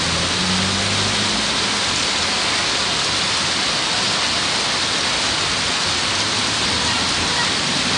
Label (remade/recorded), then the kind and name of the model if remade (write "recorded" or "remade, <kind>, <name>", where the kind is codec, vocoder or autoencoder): recorded